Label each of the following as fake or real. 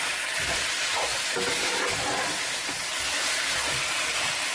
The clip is real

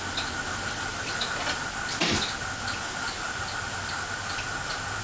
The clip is real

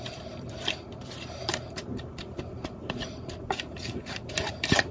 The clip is fake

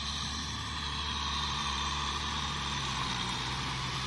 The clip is fake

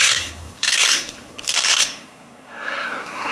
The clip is fake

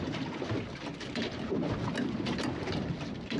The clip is real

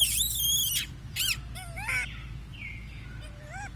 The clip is real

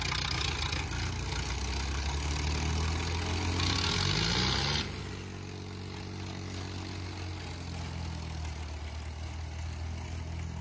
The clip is real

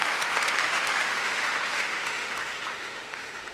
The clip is fake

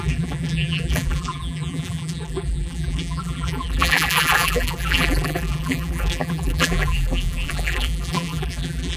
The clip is fake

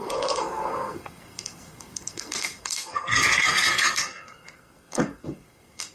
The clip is fake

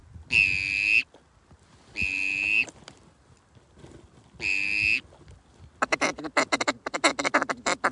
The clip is real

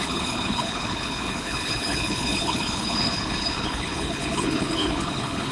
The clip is fake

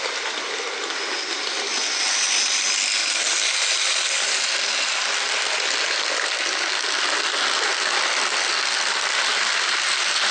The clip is real